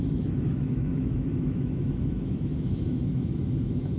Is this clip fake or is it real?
fake